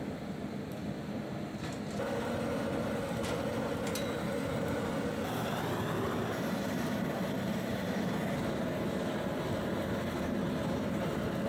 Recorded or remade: recorded